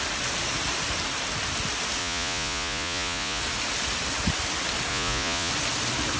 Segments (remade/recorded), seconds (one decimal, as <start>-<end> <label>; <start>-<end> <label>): 0.0-2.0 recorded; 2.0-3.4 remade; 3.4-4.9 recorded; 4.9-5.5 remade; 5.5-6.2 recorded